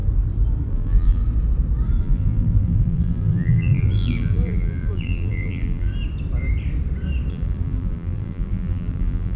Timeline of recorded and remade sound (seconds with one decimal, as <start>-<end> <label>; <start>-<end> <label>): 0.0-0.7 recorded; 0.7-1.2 remade; 1.2-2.0 recorded; 2.0-5.9 remade; 5.9-7.3 recorded; 7.3-9.4 remade